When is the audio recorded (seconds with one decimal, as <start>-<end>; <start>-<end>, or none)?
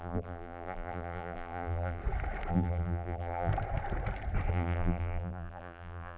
2.0-2.5; 3.5-4.5